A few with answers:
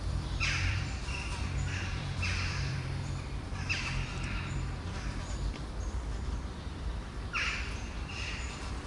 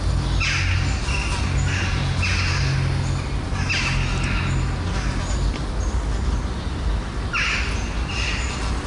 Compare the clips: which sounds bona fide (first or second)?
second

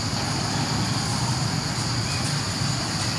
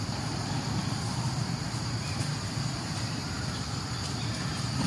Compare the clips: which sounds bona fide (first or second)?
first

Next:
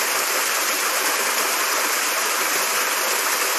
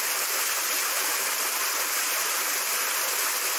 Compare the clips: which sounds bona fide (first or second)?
first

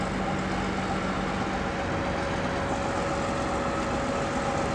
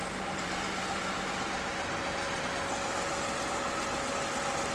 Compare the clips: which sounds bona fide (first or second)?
first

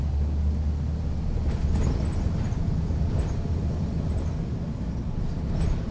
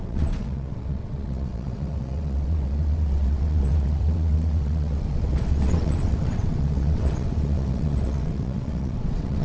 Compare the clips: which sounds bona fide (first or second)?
first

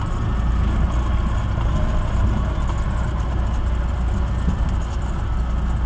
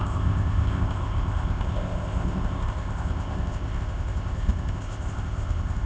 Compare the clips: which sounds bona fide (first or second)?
first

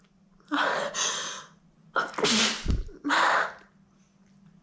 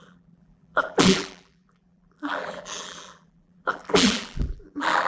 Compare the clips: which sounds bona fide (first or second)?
first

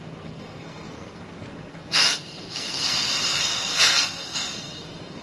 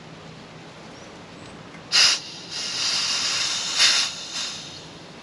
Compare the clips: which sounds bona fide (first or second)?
second